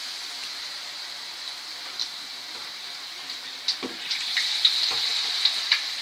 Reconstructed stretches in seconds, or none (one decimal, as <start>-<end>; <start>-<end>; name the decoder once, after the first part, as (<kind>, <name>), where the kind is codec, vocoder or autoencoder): 0.4-1.2 (vocoder, BigVGAN v2); 2.0-4.6; 5.1-6.0